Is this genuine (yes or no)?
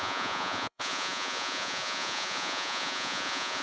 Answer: no